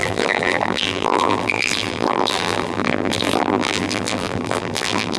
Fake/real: fake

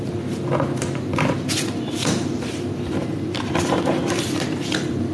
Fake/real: fake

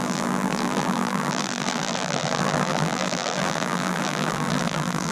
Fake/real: fake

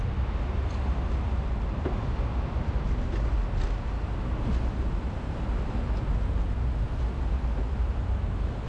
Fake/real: real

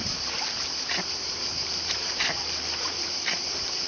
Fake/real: fake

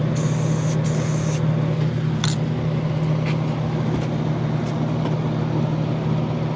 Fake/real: real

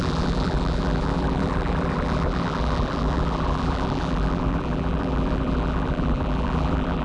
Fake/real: fake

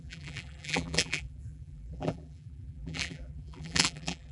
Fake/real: fake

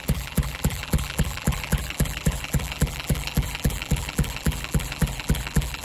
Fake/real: fake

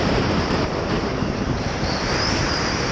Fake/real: fake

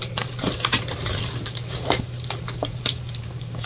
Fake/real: fake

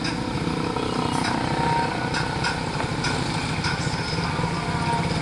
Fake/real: real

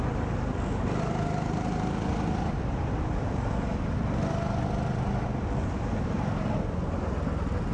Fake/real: real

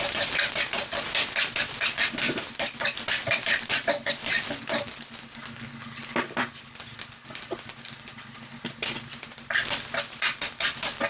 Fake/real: fake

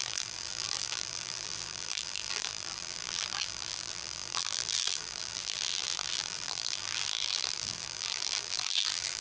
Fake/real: fake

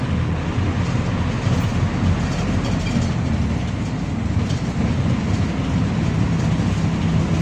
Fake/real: real